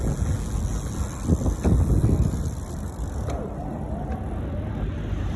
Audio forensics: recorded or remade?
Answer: recorded